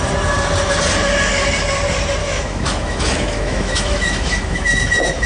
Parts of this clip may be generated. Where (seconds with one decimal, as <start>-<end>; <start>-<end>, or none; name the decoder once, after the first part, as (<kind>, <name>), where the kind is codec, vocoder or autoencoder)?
2.2-5.3 (autoencoder, DAC-VAE)